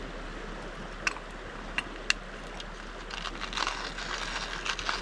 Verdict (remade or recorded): recorded